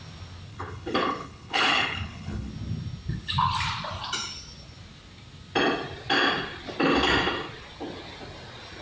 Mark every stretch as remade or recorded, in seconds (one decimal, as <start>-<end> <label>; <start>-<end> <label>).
0.0-0.5 recorded; 0.5-2.5 remade; 2.5-8.8 recorded